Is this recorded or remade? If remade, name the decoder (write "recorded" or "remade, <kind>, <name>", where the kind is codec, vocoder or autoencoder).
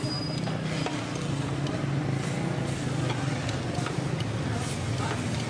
recorded